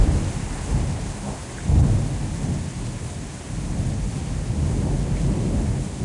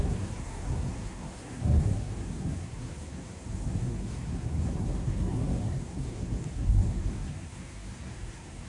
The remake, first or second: second